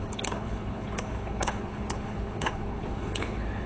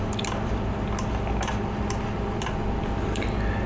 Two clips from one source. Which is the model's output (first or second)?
first